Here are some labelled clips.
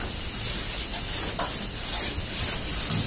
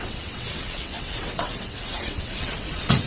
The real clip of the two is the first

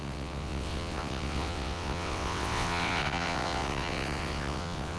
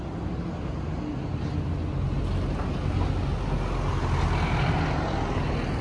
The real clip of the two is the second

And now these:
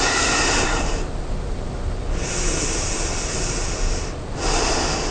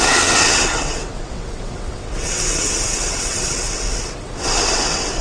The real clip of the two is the first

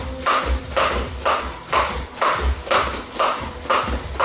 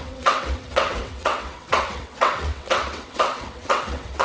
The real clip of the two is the first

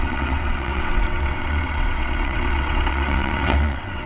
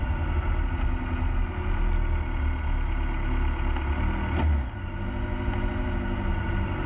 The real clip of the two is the second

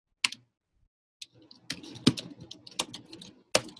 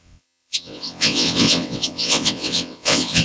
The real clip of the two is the first